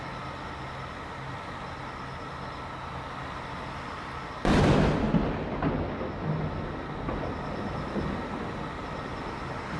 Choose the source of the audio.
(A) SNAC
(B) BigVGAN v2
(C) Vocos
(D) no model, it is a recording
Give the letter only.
D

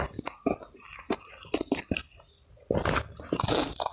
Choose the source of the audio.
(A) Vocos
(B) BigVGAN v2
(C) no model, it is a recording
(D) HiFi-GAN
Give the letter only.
C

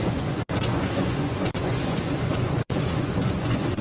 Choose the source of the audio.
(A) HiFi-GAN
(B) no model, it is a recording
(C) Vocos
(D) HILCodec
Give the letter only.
C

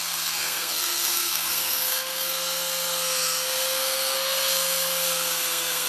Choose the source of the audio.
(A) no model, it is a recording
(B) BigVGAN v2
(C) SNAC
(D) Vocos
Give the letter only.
C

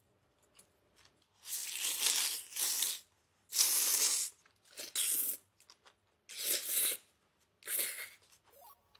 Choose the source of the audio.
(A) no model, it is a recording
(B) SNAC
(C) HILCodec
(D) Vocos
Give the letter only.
A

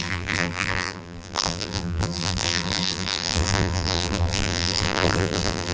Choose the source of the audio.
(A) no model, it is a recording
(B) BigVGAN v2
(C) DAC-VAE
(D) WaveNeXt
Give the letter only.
B